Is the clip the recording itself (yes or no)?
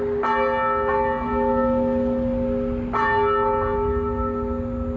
yes